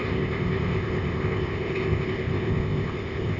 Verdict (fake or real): fake